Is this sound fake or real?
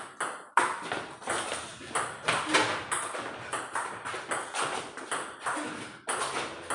real